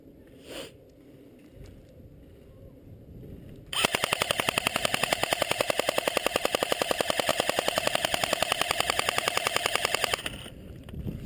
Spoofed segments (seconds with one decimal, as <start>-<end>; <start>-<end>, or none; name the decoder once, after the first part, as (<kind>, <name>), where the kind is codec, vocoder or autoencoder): 0.0-5.2 (vocoder, BigVGAN v2); 6.6-11.3